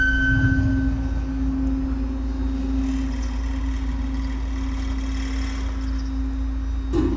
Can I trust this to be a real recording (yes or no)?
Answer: yes